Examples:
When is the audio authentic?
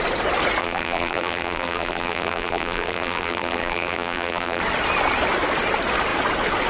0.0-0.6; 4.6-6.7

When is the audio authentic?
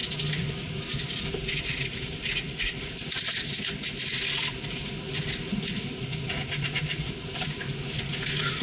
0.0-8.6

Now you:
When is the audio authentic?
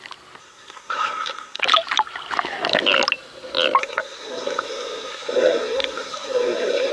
0.0-0.4; 1.6-3.8